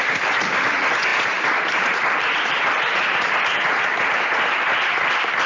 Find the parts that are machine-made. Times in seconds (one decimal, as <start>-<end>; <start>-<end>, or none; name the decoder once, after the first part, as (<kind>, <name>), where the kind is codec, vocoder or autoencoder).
1.1-4.2 (vocoder, BigVGAN v2)